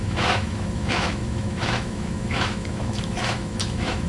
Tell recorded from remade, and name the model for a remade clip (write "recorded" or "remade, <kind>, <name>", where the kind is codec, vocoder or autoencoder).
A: remade, autoencoder, DAC-VAE